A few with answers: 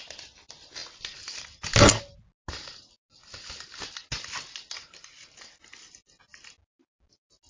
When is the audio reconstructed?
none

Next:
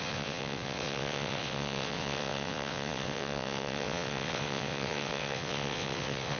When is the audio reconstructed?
0.0-6.4 (vocoder, WaveNeXt)

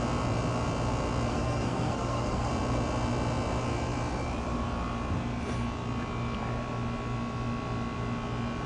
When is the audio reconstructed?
1.3-2.5 (codec, SNAC)

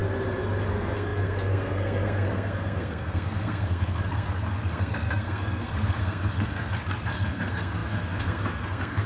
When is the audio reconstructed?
0.7-9.1 (codec, SNAC)

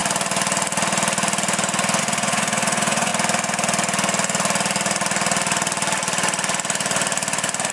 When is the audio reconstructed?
2.0-3.1 (vocoder, Vocos)

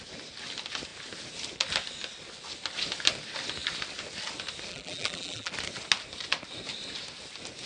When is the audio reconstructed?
4.7-5.5 (vocoder, BigVGAN v2)

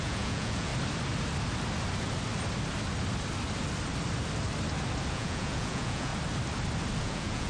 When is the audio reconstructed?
0.0-0.7 (vocoder, Vocos); 5.1-6.1; 7.0-7.5